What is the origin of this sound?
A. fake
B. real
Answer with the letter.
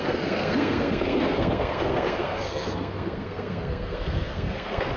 A